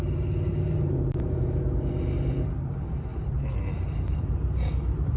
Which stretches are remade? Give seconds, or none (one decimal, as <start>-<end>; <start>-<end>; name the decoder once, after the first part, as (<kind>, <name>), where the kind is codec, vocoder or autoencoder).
0.5-1.6 (vocoder, BigVGAN v2); 3.1-4.4